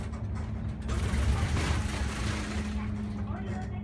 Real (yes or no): yes